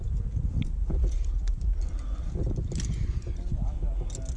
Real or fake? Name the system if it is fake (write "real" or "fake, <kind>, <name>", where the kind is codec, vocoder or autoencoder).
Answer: real